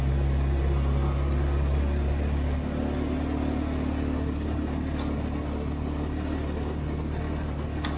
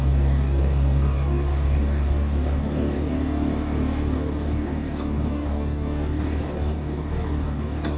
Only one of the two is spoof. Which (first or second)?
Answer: second